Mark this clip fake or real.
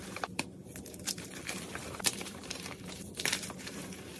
fake